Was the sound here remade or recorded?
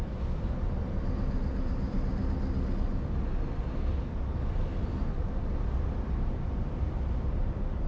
recorded